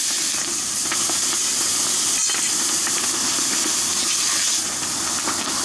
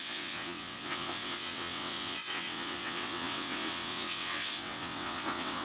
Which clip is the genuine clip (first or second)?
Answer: first